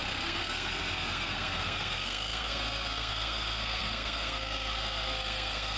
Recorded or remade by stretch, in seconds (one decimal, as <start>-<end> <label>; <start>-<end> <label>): 0.0-5.8 remade